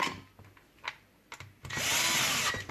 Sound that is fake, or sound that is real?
real